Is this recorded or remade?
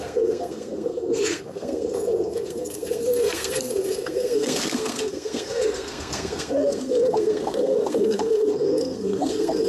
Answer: remade